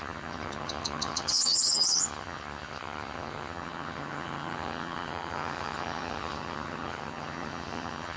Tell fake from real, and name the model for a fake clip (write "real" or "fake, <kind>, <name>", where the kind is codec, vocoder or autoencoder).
fake, vocoder, HiFi-GAN